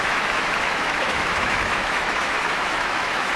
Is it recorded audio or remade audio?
remade